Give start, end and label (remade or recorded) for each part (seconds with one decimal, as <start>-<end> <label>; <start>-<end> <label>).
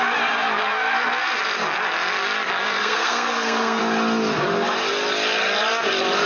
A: 0.0-2.8 recorded; 2.8-3.8 remade; 3.8-6.3 recorded